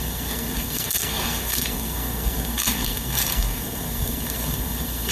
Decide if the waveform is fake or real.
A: fake